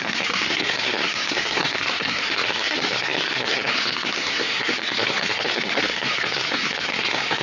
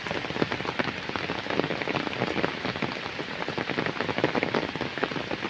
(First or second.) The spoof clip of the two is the first